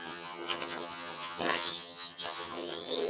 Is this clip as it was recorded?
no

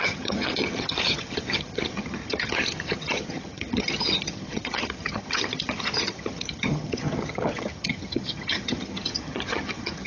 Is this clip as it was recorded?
no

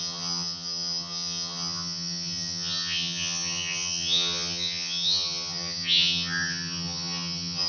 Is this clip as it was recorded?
no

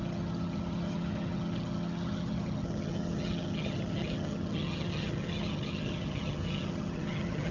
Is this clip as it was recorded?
no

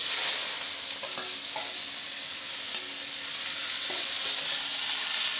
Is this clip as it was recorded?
yes